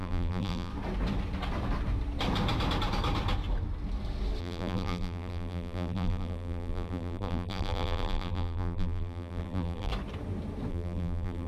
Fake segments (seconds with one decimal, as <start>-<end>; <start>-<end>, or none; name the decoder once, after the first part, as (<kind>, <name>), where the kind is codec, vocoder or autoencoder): 0.0-0.7 (vocoder, BigVGAN v2); 4.4-9.9; 10.7-11.5